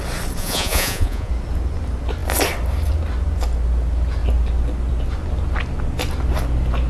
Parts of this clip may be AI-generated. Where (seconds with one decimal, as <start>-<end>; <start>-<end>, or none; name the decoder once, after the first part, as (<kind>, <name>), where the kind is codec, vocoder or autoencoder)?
0.4-1.3 (vocoder, Vocos)